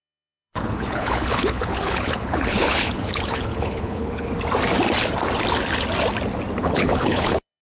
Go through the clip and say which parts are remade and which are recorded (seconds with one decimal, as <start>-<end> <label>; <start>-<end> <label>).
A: 0.0-4.3 remade; 4.3-6.6 recorded; 6.6-7.6 remade